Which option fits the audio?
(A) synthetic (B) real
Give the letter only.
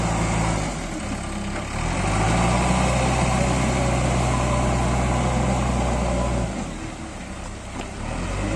B